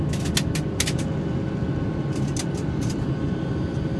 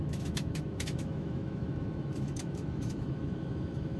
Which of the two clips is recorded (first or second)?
first